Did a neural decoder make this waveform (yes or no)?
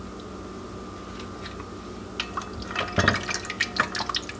no